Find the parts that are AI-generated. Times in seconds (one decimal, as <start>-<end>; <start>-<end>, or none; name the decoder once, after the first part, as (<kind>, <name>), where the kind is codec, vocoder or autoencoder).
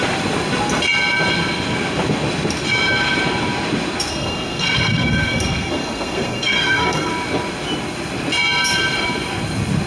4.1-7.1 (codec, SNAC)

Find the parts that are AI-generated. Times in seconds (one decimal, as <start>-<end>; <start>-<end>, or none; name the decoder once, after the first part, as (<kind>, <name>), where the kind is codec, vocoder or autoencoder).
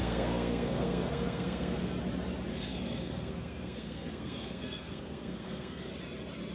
0.0-1.9 (codec, SNAC); 2.5-5.9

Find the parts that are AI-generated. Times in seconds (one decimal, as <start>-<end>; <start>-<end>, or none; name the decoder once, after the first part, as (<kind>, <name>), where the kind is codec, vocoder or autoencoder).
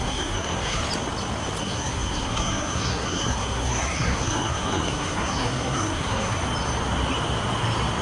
0.0-0.8 (codec, SNAC); 1.6-6.4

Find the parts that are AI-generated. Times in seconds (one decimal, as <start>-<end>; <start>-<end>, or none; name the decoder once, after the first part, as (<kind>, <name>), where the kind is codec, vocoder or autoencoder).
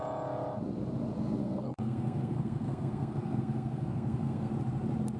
1.4-4.5 (codec, SNAC)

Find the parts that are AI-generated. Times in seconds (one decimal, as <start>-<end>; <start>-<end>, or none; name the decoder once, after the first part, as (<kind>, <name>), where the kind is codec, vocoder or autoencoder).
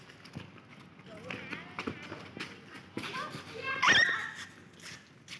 none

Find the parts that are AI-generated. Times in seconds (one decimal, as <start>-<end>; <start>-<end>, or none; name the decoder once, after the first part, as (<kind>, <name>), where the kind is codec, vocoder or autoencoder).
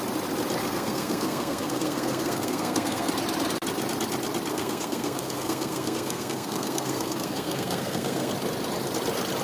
0.6-3.1 (codec, SNAC); 4.5-8.3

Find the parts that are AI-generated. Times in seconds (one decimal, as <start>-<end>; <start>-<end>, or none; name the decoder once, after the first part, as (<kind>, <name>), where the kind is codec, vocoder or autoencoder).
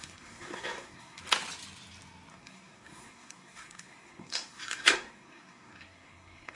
0.0-1.2 (codec, SNAC); 2.3-6.5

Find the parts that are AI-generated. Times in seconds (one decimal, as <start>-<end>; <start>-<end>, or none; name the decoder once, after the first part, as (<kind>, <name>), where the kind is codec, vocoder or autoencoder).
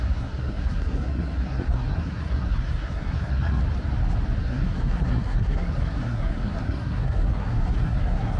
0.0-3.6 (codec, SNAC); 4.4-8.4